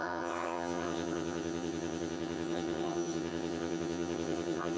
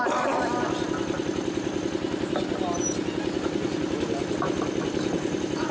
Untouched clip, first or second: second